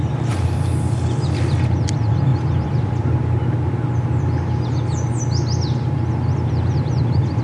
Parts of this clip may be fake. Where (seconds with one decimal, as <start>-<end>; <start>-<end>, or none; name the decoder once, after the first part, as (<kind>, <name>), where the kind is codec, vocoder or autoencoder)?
none